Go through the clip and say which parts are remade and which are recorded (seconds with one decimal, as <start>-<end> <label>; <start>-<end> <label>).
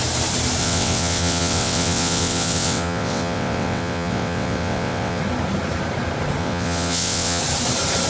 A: 0.0-0.6 recorded; 0.6-5.2 remade; 5.2-6.4 recorded; 6.4-7.4 remade; 7.4-8.1 recorded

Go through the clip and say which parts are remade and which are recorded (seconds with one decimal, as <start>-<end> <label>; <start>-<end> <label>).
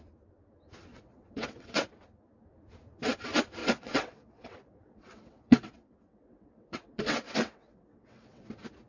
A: 0.0-0.9 recorded; 0.9-1.9 remade; 1.9-3.6 recorded; 3.6-8.5 remade; 8.5-8.9 recorded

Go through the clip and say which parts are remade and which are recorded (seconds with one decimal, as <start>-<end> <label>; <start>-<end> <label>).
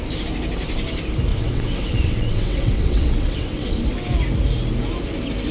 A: 0.0-1.3 recorded; 1.3-3.7 remade; 3.7-5.5 recorded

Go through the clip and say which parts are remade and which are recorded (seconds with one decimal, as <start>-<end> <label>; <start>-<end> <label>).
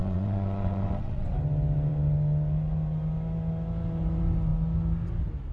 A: 0.0-1.3 remade; 1.3-5.5 recorded